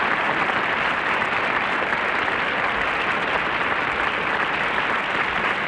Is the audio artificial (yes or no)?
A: no